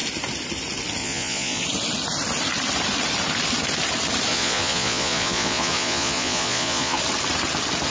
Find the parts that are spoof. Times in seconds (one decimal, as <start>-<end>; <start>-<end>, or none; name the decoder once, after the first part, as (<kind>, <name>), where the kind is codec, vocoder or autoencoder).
1.0-1.6 (vocoder, Vocos); 4.3-7.0